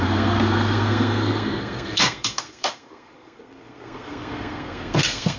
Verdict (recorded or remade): remade